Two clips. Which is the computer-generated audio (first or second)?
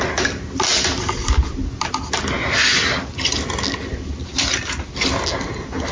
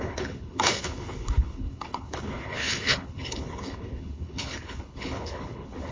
second